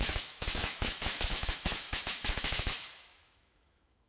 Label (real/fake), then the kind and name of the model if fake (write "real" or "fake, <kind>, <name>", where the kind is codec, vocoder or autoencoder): fake, autoencoder, DAC-VAE